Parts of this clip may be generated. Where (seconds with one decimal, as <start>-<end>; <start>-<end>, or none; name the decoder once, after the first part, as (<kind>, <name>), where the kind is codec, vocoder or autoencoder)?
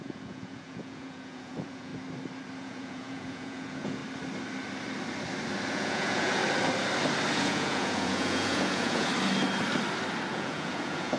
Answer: 0.0-1.9 (vocoder, Vocos); 2.6-4.0; 5.7-6.4; 7.3-9.1; 10.3-11.2